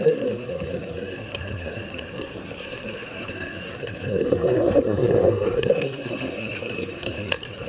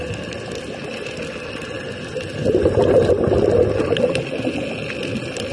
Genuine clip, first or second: second